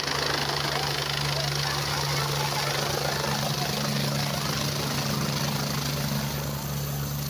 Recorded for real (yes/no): yes